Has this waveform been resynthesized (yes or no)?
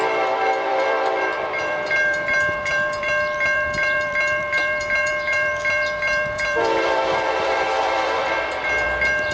yes